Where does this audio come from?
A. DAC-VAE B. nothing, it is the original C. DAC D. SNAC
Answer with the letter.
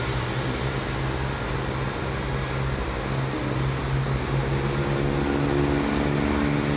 B